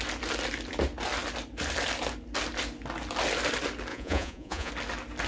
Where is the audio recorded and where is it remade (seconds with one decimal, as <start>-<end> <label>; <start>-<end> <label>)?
0.0-3.9 recorded; 3.9-4.7 remade; 4.7-5.3 recorded